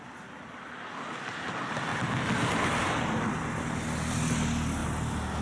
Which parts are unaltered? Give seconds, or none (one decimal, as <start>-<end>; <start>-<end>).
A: 0.0-5.4